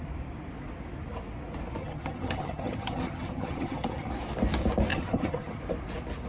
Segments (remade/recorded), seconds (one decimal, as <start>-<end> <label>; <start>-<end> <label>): 0.0-1.8 recorded; 1.8-4.1 remade; 4.1-4.9 recorded; 4.9-5.6 remade; 5.6-6.3 recorded